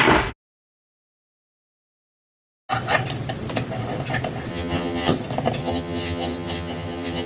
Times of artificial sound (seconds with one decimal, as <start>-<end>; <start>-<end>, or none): 4.5-5.1; 5.6-7.3

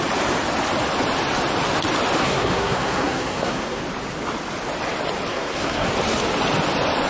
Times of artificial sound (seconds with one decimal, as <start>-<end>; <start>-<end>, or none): 2.2-3.8; 5.3-5.9

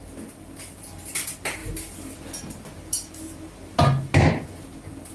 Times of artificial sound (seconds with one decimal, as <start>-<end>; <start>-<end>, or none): none

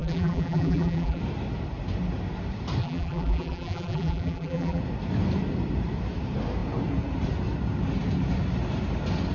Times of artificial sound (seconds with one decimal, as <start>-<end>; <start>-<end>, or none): 0.0-1.2; 2.8-4.8

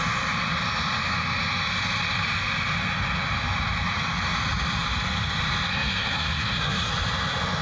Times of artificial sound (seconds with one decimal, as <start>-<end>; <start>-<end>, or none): 5.7-6.9